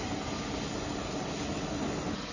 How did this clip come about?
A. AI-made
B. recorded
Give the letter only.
B